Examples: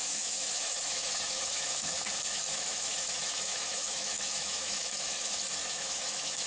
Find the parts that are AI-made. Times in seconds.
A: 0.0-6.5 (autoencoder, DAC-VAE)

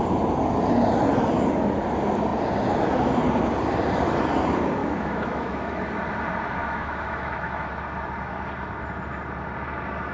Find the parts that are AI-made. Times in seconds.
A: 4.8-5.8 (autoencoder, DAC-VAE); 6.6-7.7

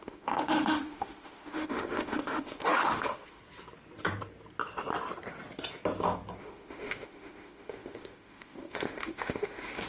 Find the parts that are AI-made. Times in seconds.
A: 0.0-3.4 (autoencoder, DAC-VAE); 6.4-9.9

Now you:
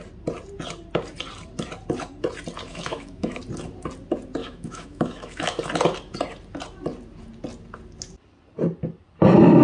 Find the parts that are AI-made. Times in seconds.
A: 2.7-3.4 (autoencoder, DAC-VAE); 4.4-5.6

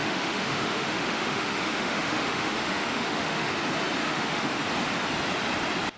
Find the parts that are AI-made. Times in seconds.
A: 0.0-3.5 (autoencoder, DAC-VAE); 4.0-4.6

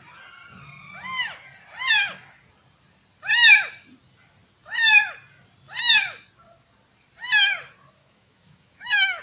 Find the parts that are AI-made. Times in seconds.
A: 8.0-9.2 (autoencoder, DAC-VAE)

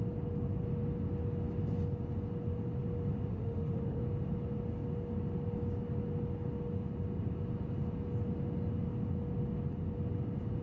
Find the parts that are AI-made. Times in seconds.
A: 3.3-4.0 (autoencoder, DAC-VAE)